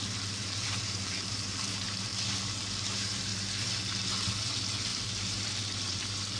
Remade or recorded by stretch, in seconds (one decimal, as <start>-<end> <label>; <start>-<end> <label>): 0.0-2.1 remade; 2.1-2.8 recorded; 2.8-3.3 remade; 3.3-4.4 recorded; 4.4-6.4 remade